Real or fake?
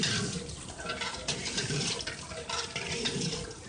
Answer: real